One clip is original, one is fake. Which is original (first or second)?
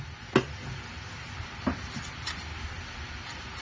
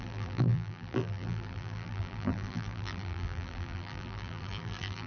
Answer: first